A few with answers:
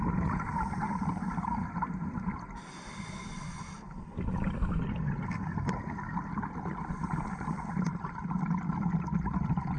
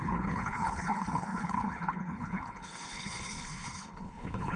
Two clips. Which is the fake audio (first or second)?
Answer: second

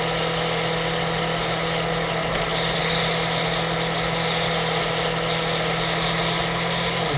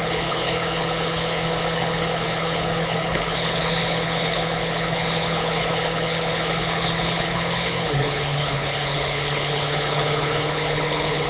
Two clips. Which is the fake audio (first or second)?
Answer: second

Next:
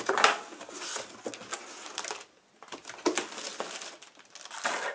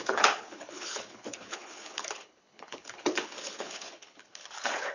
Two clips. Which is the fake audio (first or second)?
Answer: second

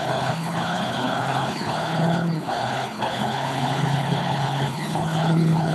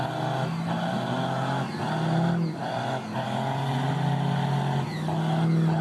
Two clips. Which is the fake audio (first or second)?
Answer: first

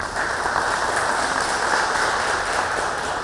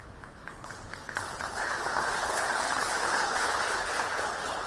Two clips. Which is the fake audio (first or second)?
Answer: second